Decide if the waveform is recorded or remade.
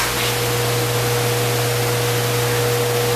recorded